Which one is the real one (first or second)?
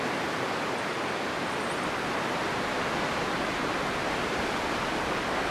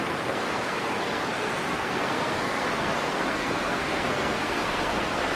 first